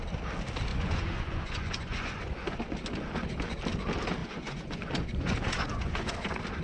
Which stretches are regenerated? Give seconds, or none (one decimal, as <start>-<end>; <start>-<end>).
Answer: 0.7-2.6; 4.2-6.1